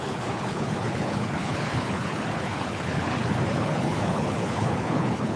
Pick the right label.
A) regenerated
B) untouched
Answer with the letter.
A